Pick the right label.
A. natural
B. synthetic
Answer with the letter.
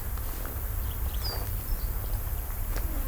A